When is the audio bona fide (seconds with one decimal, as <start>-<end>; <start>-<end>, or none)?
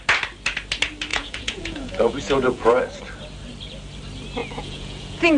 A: 0.0-1.1; 2.8-4.4